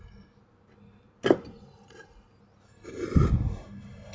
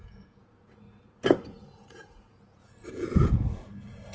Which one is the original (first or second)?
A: first